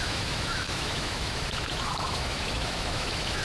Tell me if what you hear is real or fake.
fake